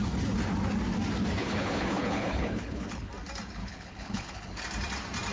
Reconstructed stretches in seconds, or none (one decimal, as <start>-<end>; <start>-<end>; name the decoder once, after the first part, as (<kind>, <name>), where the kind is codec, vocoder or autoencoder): 1.4-3.1 (codec, HILCodec); 3.6-4.6